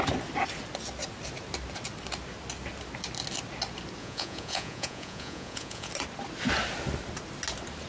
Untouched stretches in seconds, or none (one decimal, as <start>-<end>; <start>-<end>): 0.0-4.0; 5.9-7.9